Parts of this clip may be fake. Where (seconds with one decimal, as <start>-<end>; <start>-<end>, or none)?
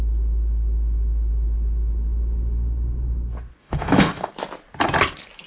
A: 3.6-4.3